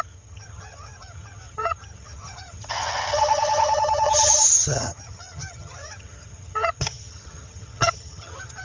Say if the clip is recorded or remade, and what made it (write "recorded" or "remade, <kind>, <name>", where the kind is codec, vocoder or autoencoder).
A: remade, vocoder, HiFi-GAN